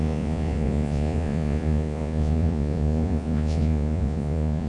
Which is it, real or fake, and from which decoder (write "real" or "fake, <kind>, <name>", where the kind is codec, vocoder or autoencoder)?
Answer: fake, vocoder, Vocos